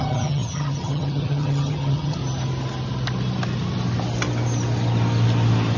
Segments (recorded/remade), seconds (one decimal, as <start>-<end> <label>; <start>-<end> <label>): 0.0-2.2 remade; 2.2-5.8 recorded